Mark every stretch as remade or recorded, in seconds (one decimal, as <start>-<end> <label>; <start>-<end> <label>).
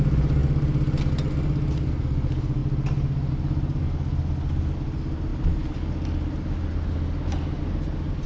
0.0-8.3 recorded